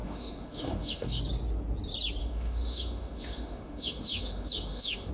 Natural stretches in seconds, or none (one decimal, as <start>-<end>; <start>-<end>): 1.2-2.2

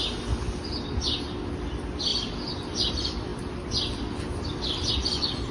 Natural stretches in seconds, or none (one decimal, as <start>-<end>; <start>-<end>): 0.0-2.1; 2.9-5.5

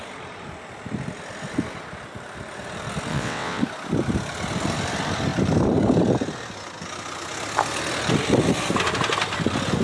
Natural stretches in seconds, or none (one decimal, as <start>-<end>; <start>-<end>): 0.0-3.1; 3.6-9.8

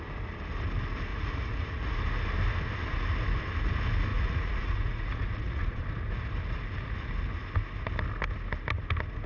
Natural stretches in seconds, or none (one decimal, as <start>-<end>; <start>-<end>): 0.0-1.1; 2.0-4.1; 5.8-9.3

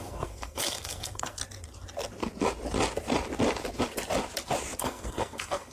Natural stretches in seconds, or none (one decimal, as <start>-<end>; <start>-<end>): 1.4-4.8

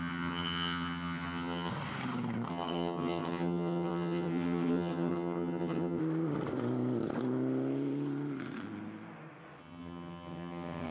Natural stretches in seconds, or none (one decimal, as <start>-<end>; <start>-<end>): 1.7-2.5; 6.0-9.6

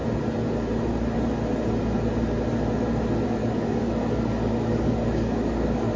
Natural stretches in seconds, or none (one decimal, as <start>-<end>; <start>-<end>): 0.0-3.4